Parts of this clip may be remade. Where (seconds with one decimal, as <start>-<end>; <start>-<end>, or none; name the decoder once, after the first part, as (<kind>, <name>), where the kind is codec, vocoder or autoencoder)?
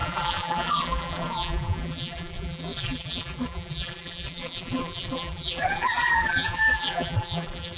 0.0-7.8 (vocoder, BigVGAN v2)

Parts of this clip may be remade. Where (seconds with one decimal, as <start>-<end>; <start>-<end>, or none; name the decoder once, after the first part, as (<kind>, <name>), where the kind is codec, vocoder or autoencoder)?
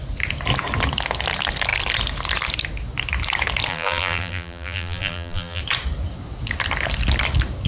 3.7-5.6 (vocoder, BigVGAN v2)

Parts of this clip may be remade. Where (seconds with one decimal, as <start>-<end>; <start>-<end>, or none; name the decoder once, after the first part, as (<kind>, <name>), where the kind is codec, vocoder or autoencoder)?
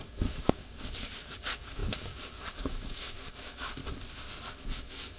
0.0-3.8 (codec, DAC); 4.6-5.2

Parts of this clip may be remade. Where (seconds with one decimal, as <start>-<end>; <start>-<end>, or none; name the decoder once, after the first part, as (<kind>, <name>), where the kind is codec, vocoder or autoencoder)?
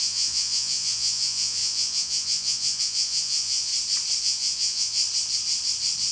0.0-3.7 (vocoder, Vocos); 4.2-5.0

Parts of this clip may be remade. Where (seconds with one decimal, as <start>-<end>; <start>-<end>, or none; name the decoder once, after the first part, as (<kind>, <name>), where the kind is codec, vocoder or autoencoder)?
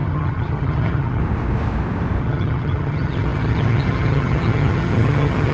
0.0-1.2 (vocoder, HiFi-GAN); 2.2-5.5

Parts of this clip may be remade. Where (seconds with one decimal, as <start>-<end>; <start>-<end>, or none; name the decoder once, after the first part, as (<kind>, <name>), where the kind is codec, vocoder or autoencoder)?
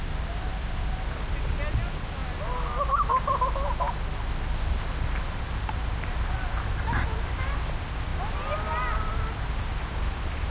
none